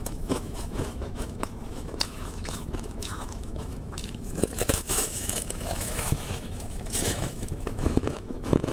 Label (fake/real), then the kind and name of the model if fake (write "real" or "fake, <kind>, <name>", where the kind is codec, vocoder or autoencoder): fake, autoencoder, DAC-VAE